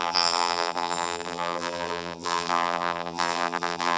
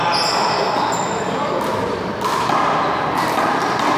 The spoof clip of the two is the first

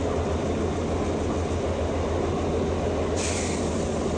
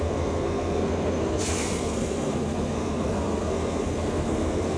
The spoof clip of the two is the second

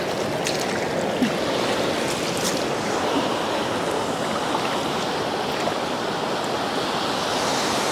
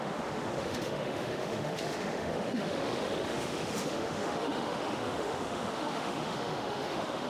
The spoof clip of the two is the second